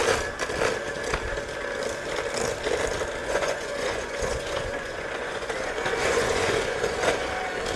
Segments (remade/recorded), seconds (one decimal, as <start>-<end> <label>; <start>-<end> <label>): 0.0-3.2 recorded; 3.2-7.3 remade; 7.3-7.8 recorded